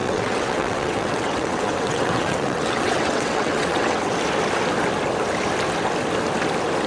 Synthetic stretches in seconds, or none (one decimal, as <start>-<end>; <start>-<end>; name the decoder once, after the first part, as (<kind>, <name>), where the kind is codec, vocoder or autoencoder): 0.0-4.1 (vocoder, WaveNeXt)